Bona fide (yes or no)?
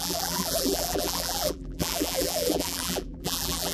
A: no